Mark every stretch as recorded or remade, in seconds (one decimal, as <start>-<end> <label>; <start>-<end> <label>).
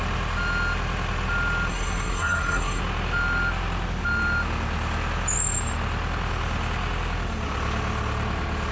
0.0-1.7 recorded; 1.7-2.8 remade; 2.8-8.7 recorded